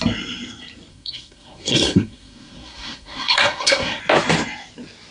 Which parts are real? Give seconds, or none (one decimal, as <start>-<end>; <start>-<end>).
0.0-0.9; 4.0-5.1